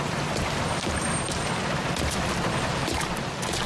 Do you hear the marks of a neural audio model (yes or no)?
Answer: no